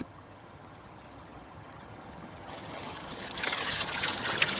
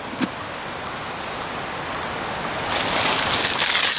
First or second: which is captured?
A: second